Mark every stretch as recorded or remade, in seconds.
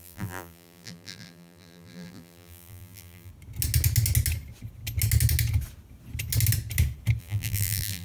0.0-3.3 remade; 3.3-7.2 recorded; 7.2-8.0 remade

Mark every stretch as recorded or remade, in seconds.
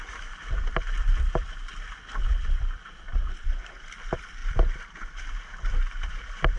0.0-3.1 remade; 3.1-3.6 recorded; 3.6-6.6 remade